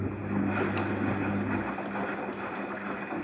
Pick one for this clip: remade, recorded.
recorded